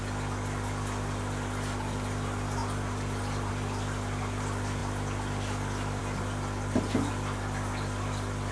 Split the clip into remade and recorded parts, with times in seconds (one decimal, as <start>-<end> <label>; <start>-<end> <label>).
0.0-8.5 recorded